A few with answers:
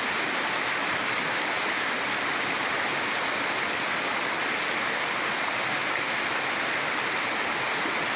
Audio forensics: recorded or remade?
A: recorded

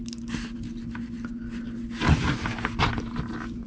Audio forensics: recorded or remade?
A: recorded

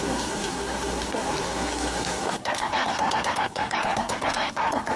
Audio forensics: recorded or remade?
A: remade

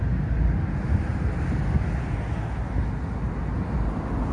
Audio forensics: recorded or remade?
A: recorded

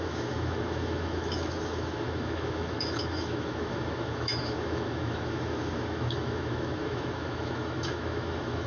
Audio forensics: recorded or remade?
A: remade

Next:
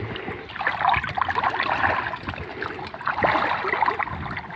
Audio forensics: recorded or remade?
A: recorded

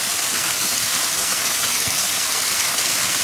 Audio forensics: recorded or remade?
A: remade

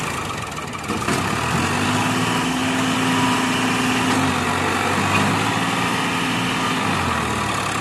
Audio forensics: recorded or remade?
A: recorded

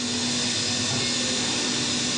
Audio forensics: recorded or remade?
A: recorded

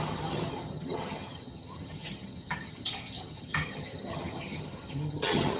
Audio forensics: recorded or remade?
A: remade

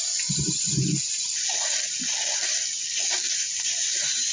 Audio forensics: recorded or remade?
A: recorded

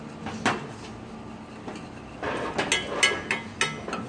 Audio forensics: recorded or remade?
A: recorded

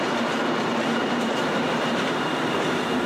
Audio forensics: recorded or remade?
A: remade